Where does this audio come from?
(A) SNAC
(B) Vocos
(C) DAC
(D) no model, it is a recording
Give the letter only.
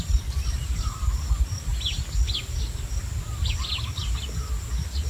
D